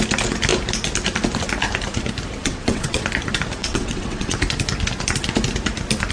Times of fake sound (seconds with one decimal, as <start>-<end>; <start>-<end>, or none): 2.4-3.0; 3.6-4.4